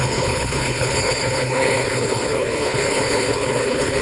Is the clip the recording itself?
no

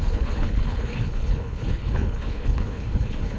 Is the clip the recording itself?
no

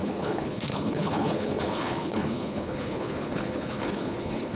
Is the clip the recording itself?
no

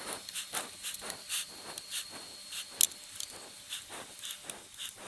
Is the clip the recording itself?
yes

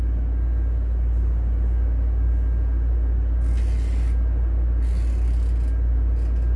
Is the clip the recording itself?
yes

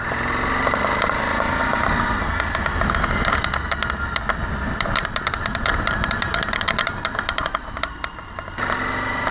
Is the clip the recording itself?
yes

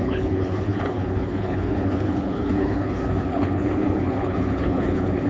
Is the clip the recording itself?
no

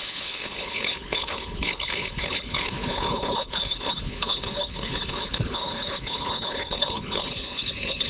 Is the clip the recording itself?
no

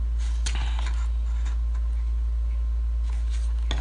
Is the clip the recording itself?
yes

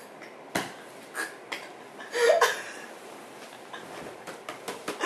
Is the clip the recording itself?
yes